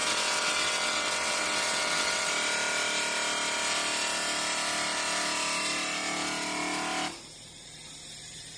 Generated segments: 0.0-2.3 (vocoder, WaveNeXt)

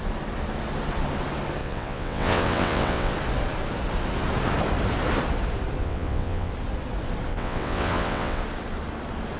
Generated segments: 1.6-3.1 (vocoder, WaveNeXt); 5.8-6.5; 7.3-8.4

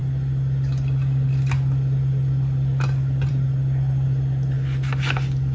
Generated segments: none

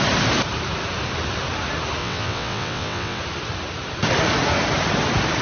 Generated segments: 2.0-3.2 (vocoder, WaveNeXt)